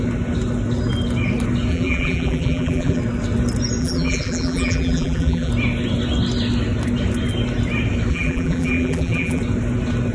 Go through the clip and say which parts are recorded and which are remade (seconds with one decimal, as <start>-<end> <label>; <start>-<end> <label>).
0.0-1.7 recorded; 1.7-3.0 remade; 3.0-3.8 recorded; 3.8-5.5 remade; 5.5-8.1 recorded; 8.1-9.4 remade; 9.4-10.1 recorded